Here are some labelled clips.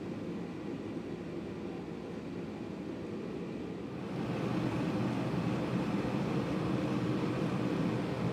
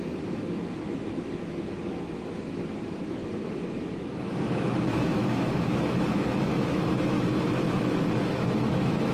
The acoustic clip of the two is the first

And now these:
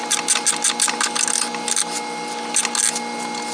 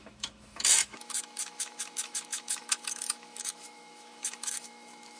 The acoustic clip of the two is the first